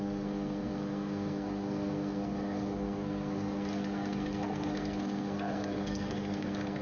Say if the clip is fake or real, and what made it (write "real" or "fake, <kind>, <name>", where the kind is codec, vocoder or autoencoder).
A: fake, codec, SNAC